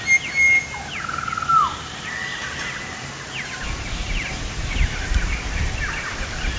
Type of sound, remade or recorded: recorded